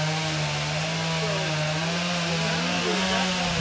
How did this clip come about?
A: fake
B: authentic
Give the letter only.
B